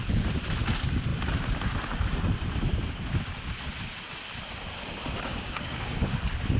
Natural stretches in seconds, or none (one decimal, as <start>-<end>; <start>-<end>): 0.0-5.3; 6.0-6.6